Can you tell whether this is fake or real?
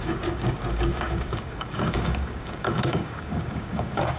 fake